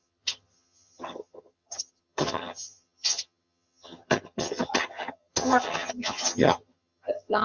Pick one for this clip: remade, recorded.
remade